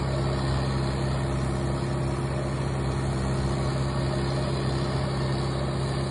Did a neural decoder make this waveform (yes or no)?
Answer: no